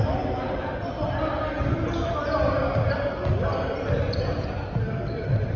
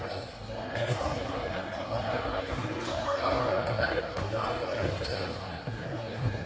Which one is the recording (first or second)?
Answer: first